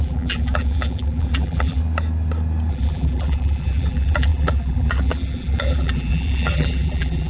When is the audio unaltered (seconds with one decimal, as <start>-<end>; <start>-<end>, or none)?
1.8-2.7